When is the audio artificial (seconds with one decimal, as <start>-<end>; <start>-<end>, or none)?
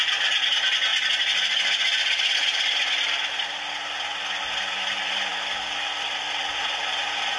5.3-6.8